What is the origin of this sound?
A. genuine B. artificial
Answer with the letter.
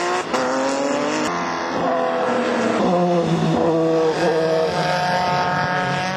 A